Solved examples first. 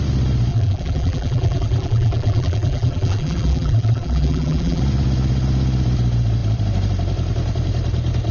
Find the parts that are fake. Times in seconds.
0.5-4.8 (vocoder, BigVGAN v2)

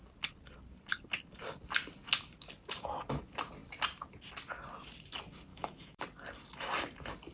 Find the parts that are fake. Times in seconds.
5.5-6.0 (autoencoder, DAC-VAE)

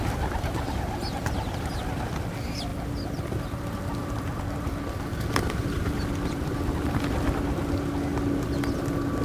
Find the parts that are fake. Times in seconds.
none

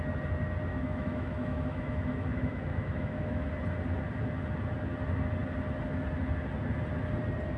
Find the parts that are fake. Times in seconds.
0.7-3.5 (autoencoder, DAC-VAE)

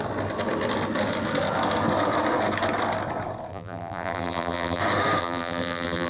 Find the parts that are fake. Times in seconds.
3.5-4.8 (vocoder, BigVGAN v2); 5.2-6.1

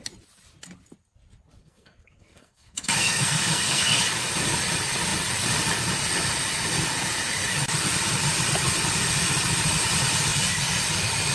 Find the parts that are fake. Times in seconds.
1.6-4.0 (codec, SNAC)

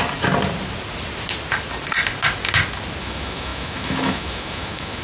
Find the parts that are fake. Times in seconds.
3.0-5.0 (autoencoder, DAC-VAE)